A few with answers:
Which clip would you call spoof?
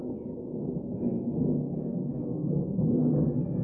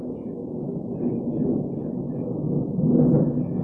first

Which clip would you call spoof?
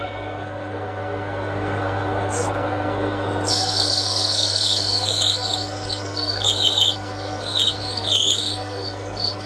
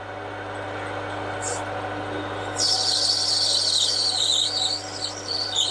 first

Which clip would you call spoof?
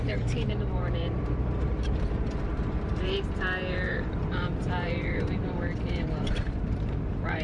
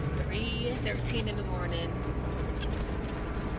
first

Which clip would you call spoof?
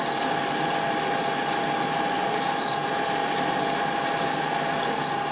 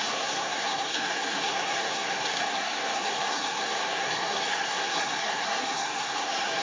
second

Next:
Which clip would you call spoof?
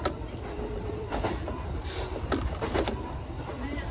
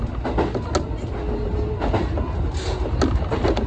first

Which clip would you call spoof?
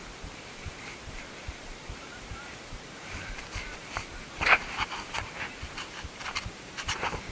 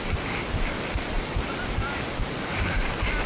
first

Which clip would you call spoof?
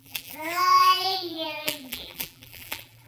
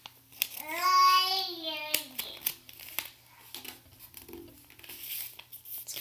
first